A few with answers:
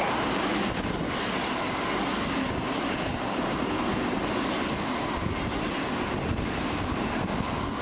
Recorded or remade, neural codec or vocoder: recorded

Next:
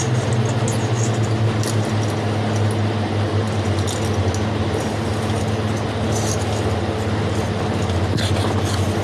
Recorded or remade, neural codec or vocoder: recorded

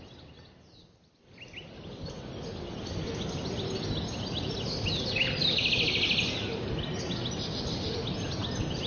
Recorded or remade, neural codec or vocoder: recorded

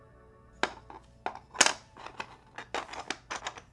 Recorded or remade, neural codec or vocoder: recorded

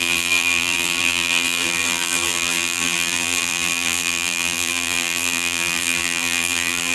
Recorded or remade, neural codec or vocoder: remade, vocoder, BigVGAN v2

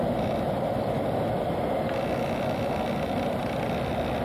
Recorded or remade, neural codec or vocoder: recorded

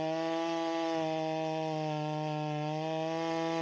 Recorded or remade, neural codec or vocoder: recorded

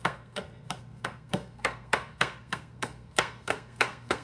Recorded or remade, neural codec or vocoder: remade, codec, SNAC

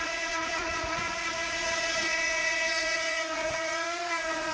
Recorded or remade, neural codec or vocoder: remade, vocoder, Vocos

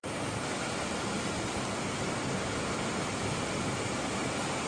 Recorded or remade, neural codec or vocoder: recorded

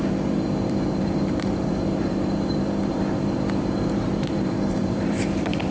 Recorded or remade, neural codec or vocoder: remade, vocoder, BigVGAN v2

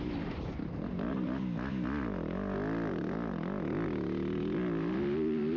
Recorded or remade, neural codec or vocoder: recorded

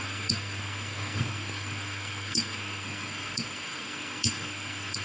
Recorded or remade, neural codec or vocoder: remade, codec, SNAC